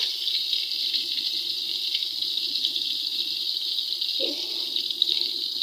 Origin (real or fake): real